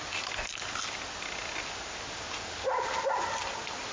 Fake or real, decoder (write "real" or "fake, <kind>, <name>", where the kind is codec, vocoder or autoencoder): real